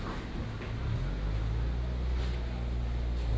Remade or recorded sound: recorded